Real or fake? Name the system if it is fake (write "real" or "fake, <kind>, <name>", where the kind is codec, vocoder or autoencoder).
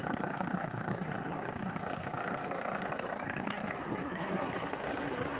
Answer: fake, codec, SNAC